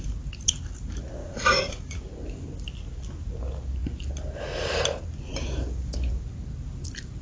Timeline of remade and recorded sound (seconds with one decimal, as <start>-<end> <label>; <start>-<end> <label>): 0.0-1.2 recorded; 1.2-2.0 remade; 2.0-7.2 recorded